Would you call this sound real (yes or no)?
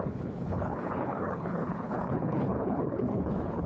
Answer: no